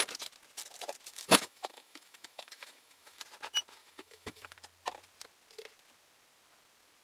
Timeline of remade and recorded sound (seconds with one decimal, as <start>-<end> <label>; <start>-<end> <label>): 0.0-1.1 recorded; 1.1-3.2 remade; 3.2-3.8 recorded; 3.8-4.5 remade; 4.5-7.0 recorded